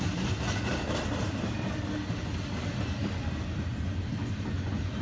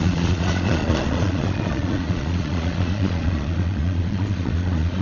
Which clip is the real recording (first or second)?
first